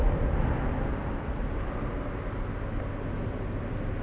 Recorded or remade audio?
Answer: recorded